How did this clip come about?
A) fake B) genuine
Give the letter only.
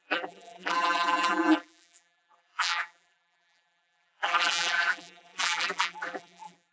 A